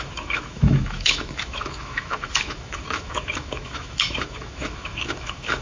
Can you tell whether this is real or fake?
fake